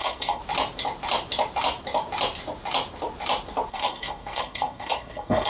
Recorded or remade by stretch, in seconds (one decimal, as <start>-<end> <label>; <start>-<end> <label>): 0.0-0.4 remade; 0.4-3.7 recorded; 3.7-5.5 remade